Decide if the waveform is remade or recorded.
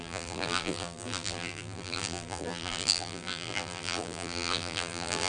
remade